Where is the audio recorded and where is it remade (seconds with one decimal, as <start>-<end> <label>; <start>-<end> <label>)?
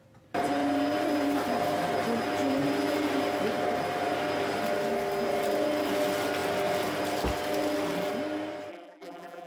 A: 0.0-8.7 recorded; 8.7-9.5 remade